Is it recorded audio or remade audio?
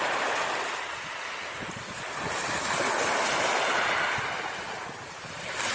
recorded